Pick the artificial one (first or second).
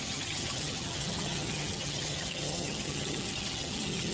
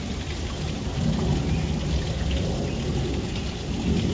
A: first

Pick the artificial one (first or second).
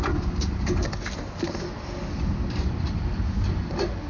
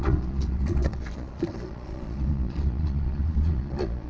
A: second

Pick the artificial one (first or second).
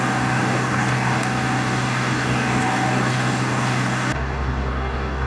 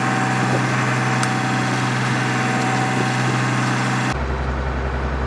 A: first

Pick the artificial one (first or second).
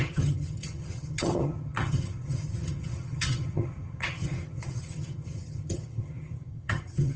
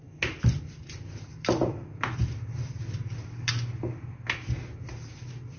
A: first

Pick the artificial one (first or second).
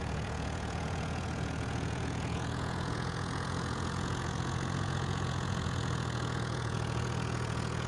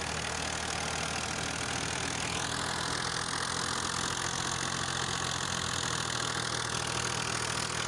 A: first